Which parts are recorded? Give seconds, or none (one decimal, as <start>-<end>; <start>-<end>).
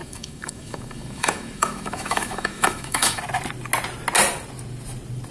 3.2-5.3